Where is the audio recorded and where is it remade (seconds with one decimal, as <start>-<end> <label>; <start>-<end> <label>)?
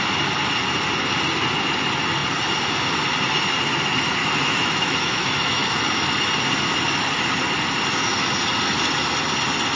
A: 0.0-4.2 recorded; 4.2-5.8 remade; 5.8-9.8 recorded